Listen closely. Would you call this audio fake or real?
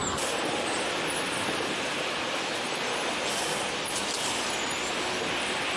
real